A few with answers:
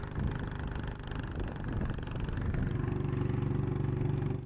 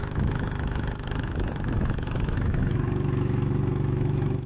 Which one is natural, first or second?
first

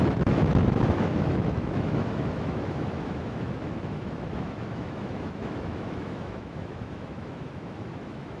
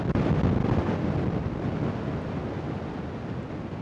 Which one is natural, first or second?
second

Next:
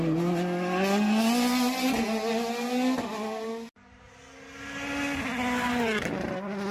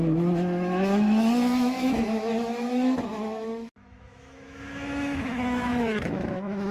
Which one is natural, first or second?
first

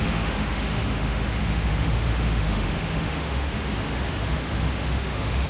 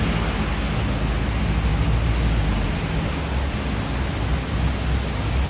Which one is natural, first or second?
second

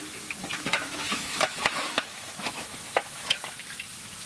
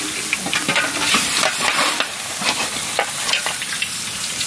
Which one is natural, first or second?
second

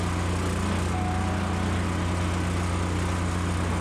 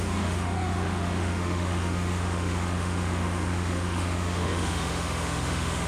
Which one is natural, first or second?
first